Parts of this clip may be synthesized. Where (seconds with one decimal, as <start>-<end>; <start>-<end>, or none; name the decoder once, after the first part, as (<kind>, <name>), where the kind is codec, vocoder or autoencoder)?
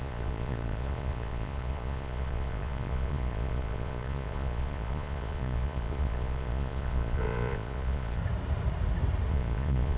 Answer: 0.0-8.2 (vocoder, Vocos); 9.3-10.0